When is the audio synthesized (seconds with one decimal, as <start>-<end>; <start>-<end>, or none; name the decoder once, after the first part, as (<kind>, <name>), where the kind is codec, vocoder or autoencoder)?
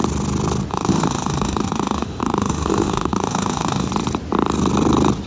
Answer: 0.7-3.9 (autoencoder, DAC-VAE)